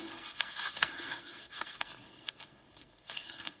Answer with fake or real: fake